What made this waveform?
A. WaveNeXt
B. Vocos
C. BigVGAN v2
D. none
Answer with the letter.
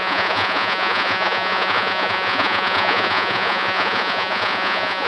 B